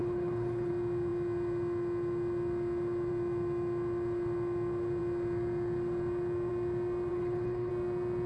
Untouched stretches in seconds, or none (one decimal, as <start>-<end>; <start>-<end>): 0.7-7.1; 7.7-8.3